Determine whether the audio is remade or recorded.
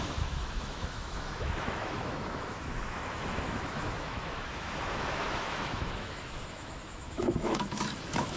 remade